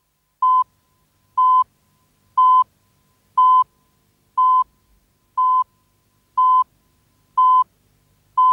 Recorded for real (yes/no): yes